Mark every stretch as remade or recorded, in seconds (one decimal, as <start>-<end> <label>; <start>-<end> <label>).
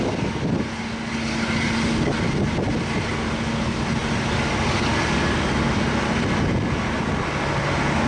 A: 0.0-8.1 recorded